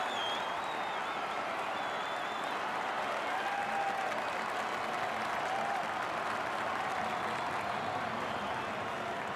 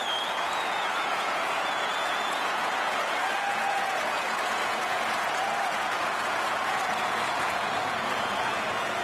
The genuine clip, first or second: first